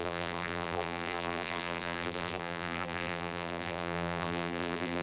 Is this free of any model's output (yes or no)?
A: no